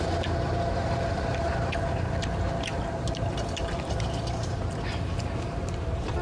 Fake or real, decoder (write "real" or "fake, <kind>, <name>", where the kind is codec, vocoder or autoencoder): fake, vocoder, BigVGAN v2